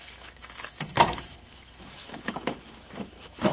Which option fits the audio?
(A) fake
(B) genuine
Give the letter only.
A